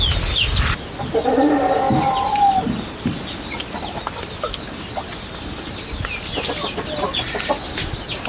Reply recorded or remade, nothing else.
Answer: recorded